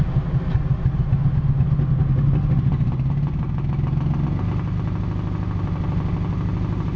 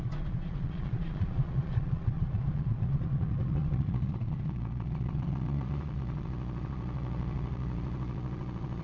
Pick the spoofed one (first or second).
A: second